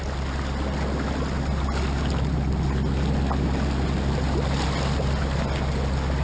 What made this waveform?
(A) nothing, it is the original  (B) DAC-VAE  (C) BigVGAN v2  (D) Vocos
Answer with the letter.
A